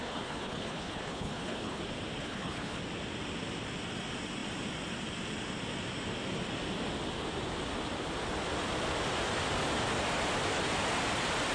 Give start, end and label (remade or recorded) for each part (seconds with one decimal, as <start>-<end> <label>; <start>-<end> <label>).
0.0-1.8 remade; 1.8-2.2 recorded; 2.2-2.8 remade; 2.8-11.5 recorded